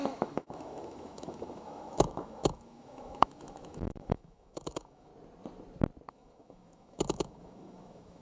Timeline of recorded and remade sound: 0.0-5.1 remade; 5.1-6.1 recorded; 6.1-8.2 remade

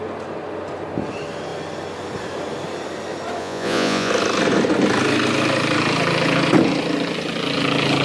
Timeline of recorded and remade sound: 0.0-3.4 recorded; 3.4-4.1 remade; 4.1-8.0 recorded

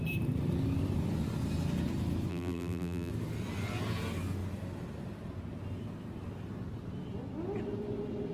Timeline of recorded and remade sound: 0.0-2.3 recorded; 2.3-3.1 remade; 3.1-8.3 recorded